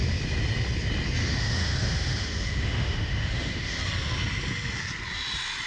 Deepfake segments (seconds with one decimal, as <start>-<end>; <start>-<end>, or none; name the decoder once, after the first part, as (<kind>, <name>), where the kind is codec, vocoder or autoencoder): 1.2-3.8 (autoencoder, DAC-VAE)